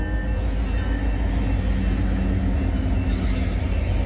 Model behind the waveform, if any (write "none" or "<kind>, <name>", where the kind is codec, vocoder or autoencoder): none